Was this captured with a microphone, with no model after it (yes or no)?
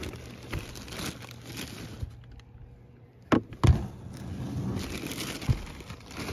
yes